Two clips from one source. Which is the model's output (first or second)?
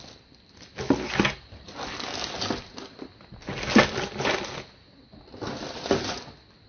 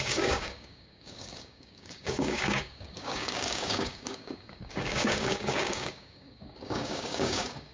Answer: second